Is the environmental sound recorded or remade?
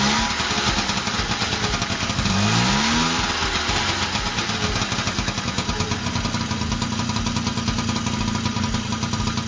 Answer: recorded